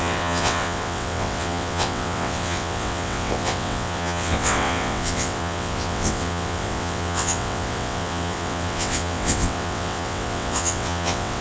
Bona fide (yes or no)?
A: no